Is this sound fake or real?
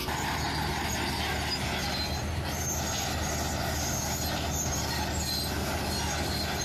real